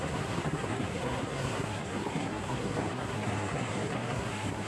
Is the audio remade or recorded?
remade